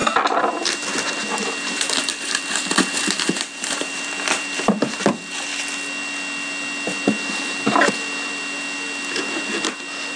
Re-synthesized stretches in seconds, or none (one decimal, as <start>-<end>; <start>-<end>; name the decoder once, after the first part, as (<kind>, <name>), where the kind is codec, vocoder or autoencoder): 0.0-5.0 (vocoder, BigVGAN v2)